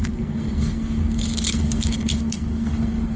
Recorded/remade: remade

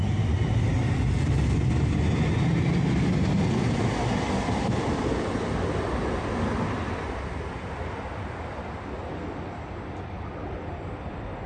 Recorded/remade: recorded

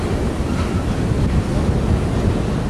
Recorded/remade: recorded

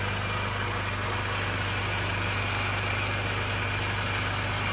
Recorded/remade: recorded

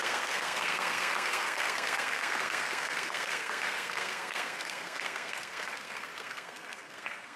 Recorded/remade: remade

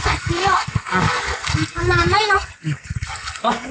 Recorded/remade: remade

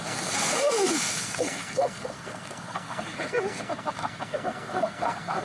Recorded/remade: remade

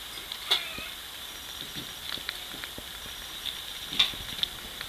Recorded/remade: recorded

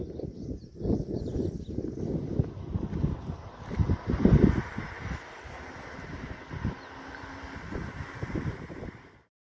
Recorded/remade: recorded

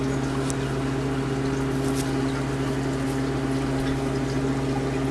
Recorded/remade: recorded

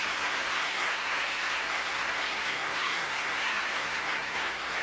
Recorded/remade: remade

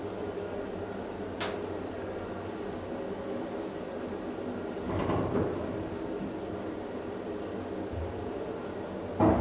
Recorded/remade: recorded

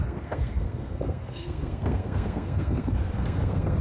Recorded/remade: remade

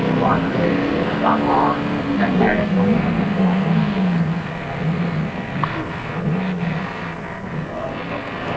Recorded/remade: remade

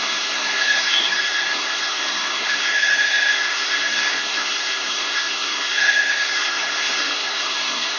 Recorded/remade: remade